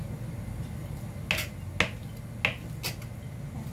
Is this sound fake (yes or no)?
no